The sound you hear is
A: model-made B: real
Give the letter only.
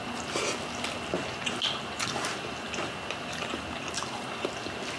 B